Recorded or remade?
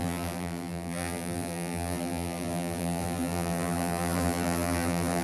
remade